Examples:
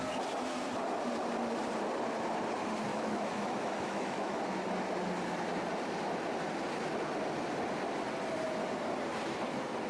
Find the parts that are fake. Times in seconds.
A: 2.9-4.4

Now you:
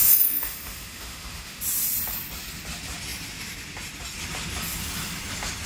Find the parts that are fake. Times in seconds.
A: 0.0-1.6

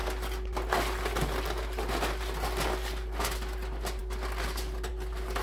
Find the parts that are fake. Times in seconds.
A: none

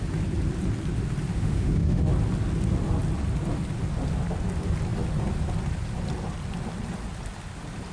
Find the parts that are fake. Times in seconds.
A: 1.3-2.0

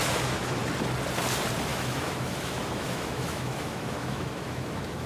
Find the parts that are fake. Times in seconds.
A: 0.0-0.6; 1.7-5.1